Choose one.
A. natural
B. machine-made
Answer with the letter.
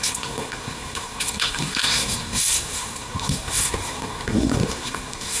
B